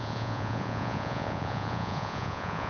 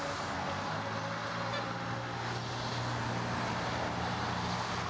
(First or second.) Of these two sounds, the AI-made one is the first